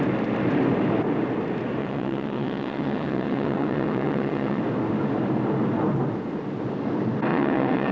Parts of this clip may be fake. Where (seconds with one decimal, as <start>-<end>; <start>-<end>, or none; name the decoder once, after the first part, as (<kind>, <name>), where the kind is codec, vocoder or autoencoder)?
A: 1.8-4.6 (vocoder, WaveNeXt); 7.3-7.9